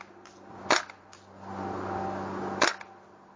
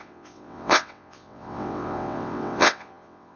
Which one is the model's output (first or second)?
second